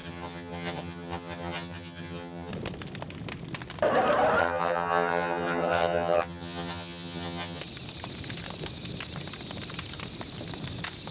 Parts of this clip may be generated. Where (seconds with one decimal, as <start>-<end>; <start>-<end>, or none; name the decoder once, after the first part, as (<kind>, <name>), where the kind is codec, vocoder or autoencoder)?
0.0-2.5 (vocoder, HiFi-GAN); 4.4-7.6